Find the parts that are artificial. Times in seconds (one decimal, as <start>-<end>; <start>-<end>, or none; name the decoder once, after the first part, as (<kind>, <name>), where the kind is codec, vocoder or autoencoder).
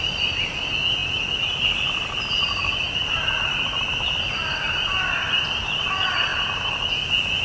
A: none